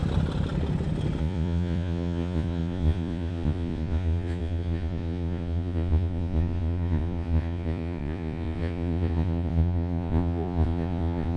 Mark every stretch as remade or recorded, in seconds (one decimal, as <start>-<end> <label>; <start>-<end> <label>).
0.0-1.2 recorded; 1.2-11.4 remade